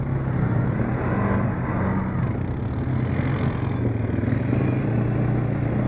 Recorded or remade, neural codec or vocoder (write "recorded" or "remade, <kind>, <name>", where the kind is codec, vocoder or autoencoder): recorded